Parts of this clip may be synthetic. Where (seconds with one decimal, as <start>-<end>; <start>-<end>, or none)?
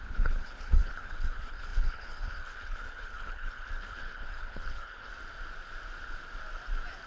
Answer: 0.0-5.1